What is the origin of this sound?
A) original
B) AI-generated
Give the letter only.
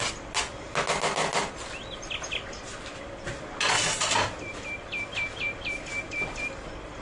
A